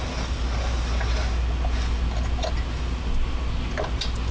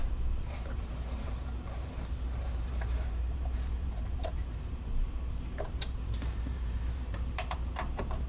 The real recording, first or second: first